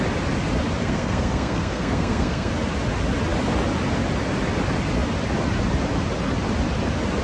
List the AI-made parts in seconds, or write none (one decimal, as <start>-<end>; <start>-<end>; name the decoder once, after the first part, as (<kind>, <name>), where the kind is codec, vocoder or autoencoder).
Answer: 0.8-2.5 (codec, SNAC)